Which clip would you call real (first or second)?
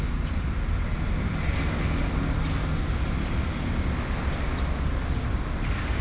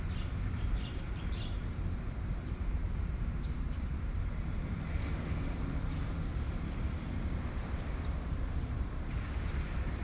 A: first